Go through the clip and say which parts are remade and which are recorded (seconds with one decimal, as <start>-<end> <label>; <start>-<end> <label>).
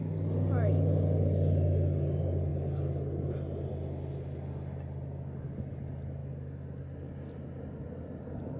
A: 0.0-8.6 recorded